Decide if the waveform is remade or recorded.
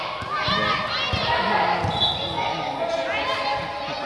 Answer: recorded